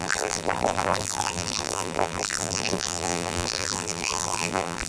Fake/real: fake